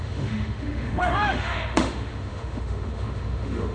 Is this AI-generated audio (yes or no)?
yes